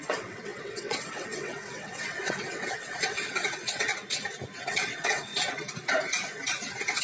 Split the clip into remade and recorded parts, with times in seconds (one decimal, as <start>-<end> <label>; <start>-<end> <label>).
0.0-3.9 remade; 3.9-4.7 recorded; 4.7-5.3 remade; 5.3-7.0 recorded